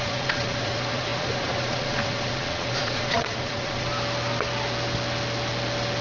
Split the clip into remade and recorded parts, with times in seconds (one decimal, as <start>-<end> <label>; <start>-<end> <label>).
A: 0.0-3.9 remade; 3.9-6.0 recorded